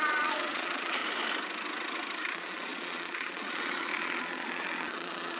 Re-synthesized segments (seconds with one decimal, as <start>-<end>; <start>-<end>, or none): 0.0-1.0; 2.3-5.4